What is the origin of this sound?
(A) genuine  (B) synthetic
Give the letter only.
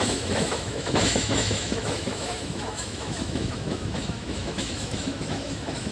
B